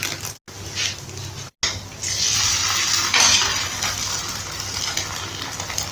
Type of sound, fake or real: real